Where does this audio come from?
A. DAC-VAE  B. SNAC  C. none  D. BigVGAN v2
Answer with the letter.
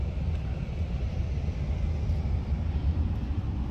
C